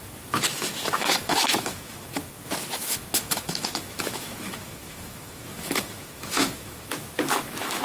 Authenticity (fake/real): fake